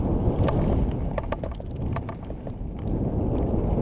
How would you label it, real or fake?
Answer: real